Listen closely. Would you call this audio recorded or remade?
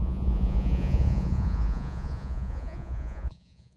remade